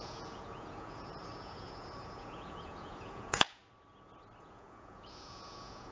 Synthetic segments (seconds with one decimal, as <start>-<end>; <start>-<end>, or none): 0.0-3.6; 4.4-5.9